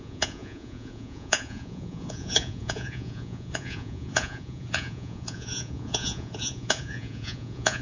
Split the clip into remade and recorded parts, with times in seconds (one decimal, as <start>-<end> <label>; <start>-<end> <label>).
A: 0.0-7.8 remade